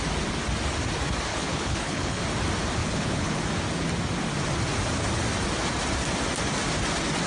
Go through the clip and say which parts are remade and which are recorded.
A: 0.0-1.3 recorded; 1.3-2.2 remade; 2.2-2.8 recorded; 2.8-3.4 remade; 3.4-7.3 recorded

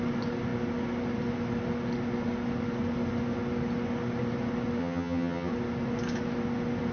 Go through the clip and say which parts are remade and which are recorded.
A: 0.0-4.8 recorded; 4.8-5.5 remade; 5.5-6.9 recorded

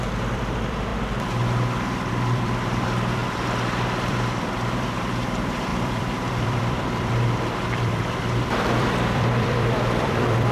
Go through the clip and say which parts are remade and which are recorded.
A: 0.0-0.9 remade; 0.9-2.1 recorded; 2.1-3.2 remade; 3.2-4.1 recorded; 4.1-10.5 remade

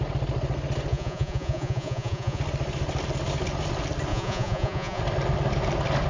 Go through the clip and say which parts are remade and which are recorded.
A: 0.0-0.9 recorded; 0.9-2.4 remade; 2.4-4.1 recorded; 4.1-5.0 remade; 5.0-6.1 recorded

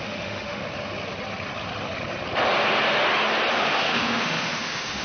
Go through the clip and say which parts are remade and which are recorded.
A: 0.0-0.6 remade; 0.6-3.6 recorded; 3.6-5.0 remade